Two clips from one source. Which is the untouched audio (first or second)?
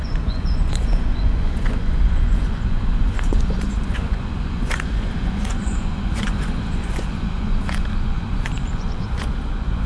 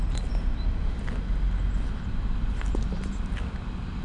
second